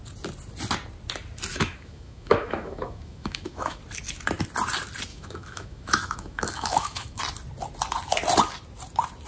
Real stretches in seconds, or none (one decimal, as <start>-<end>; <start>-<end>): 0.0-1.5; 3.8-5.1; 7.2-9.3